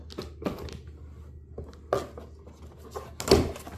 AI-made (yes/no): no